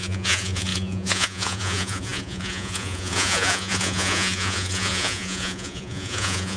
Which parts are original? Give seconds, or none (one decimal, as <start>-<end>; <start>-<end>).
none